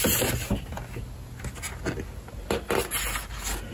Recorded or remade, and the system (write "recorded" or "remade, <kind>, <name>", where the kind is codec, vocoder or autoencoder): recorded